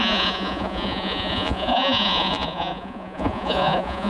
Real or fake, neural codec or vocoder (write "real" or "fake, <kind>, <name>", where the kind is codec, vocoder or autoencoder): fake, vocoder, Vocos